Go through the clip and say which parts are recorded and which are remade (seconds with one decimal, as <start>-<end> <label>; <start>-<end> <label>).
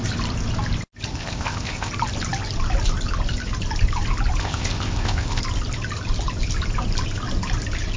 0.0-1.1 recorded; 1.1-1.9 remade; 1.9-4.4 recorded; 4.4-5.4 remade; 5.4-8.0 recorded